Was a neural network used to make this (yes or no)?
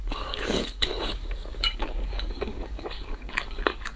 yes